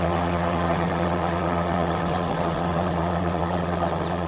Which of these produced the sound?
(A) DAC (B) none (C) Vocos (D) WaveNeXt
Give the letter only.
D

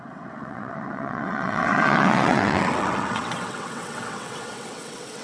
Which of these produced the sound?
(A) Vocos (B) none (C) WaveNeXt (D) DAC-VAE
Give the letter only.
C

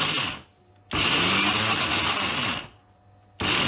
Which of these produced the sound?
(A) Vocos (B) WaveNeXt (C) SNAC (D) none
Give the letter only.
D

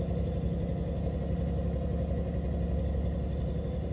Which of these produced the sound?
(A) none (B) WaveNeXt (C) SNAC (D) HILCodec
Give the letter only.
A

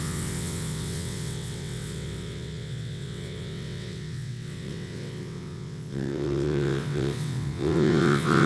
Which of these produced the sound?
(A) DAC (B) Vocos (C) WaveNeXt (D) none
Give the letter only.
C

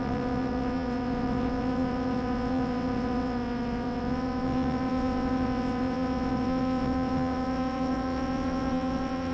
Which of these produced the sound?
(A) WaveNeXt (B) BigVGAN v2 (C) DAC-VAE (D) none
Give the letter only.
A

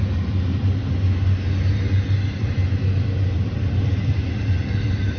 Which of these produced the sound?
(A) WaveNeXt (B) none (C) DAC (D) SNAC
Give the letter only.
B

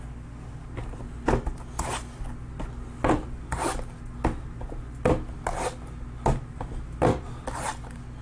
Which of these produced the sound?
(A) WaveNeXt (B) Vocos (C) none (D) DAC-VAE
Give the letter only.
C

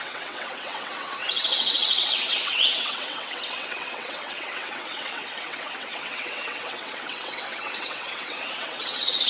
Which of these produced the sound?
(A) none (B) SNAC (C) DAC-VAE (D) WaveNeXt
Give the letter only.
D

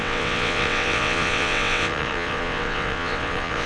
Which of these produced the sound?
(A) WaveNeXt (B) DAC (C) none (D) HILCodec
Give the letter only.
A